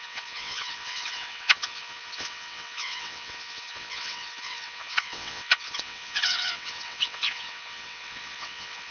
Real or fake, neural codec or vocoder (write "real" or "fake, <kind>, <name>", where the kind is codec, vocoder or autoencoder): fake, vocoder, WaveNeXt